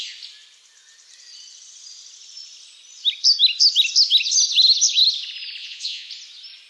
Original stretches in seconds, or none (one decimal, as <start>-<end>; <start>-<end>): 0.0-5.6; 6.1-6.7